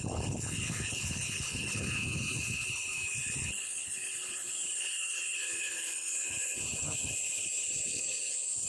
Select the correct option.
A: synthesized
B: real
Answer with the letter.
A